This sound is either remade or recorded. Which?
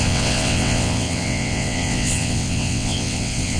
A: remade